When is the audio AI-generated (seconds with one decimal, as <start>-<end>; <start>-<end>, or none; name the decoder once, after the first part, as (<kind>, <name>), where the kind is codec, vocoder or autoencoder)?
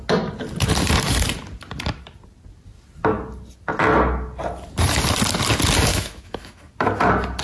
5.9-6.7 (autoencoder, DAC-VAE)